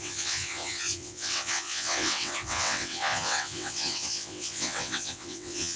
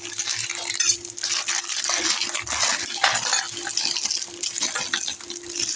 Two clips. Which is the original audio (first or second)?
second